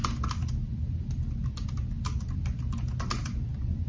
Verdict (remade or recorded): recorded